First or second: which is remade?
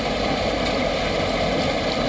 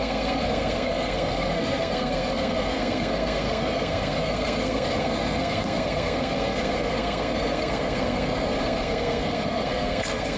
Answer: second